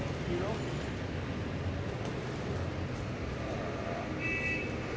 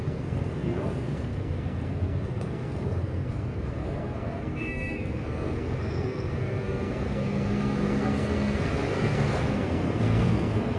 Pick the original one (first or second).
first